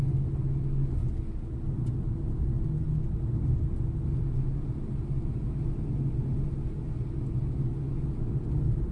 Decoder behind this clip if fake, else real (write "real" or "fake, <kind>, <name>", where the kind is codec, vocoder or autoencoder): real